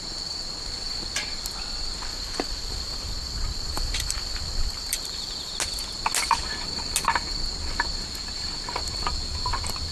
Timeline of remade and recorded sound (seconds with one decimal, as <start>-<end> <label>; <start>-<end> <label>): 0.0-2.1 recorded; 2.1-5.5 remade; 5.5-9.9 recorded